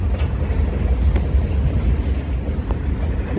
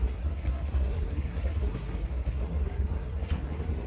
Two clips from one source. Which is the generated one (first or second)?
second